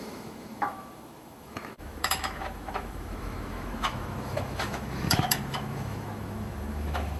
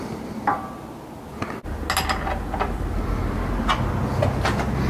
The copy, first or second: first